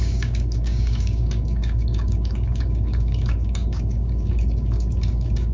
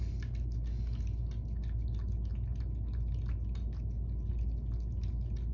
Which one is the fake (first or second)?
first